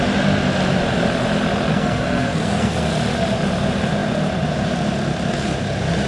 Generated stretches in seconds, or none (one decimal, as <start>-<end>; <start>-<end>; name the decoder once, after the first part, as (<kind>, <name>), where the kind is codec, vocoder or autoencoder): 1.7-2.9 (codec, SNAC)

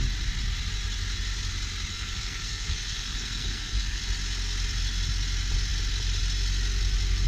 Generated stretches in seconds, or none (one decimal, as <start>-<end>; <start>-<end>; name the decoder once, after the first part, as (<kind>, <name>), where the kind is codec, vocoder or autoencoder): 1.9-4.0 (codec, SNAC)

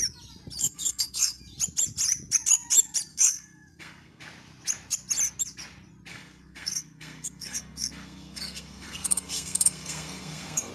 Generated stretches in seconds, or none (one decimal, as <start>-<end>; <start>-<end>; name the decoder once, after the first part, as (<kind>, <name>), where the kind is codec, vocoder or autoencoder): 0.6-1.4 (codec, SNAC); 3.1-4.2; 6.1-10.7

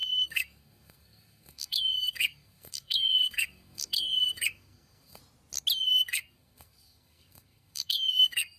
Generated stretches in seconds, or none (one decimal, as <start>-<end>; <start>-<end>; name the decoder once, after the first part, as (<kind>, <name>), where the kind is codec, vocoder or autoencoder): 0.0-5.2 (codec, SNAC); 5.8-8.6

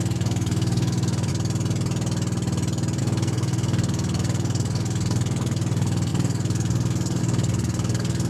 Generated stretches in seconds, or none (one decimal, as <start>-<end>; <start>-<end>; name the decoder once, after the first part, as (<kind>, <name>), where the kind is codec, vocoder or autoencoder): 0.0-1.3 (codec, SNAC); 3.0-8.3

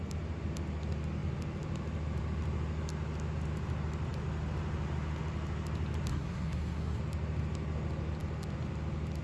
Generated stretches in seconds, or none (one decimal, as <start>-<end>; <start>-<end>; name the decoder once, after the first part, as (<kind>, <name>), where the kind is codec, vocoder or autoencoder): 6.1-7.0 (codec, SNAC)